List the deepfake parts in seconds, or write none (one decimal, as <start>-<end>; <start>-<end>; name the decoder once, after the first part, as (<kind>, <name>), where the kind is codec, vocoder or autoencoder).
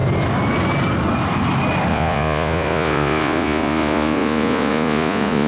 1.9-5.5 (vocoder, Vocos)